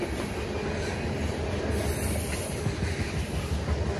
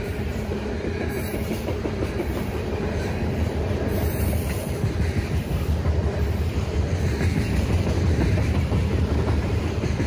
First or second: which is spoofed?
second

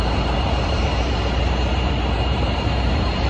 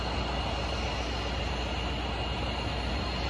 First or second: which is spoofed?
first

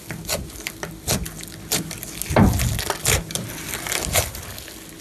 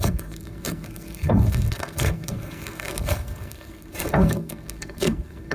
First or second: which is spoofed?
second